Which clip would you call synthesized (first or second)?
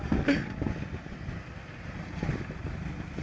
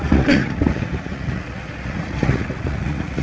second